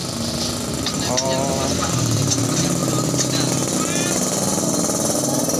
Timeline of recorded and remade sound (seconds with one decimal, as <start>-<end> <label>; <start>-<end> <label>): 0.0-5.6 recorded